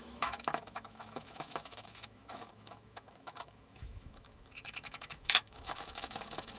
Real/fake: fake